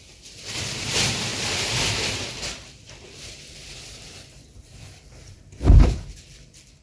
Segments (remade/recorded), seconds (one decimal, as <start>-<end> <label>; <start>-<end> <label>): 0.0-6.8 remade